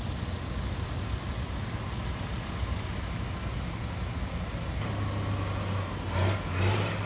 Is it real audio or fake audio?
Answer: real